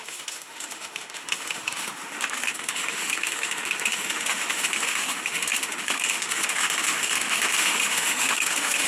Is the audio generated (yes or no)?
yes